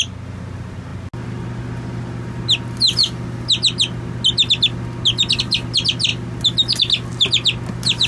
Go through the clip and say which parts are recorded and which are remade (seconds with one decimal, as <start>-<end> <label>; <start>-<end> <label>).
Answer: 0.0-8.1 recorded